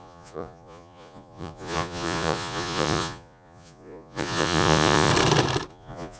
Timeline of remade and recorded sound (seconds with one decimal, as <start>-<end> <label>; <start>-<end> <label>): 0.0-5.1 remade; 5.1-5.7 recorded; 5.7-6.2 remade